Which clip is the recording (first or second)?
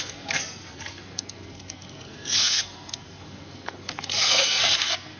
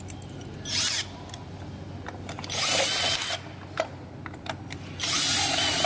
second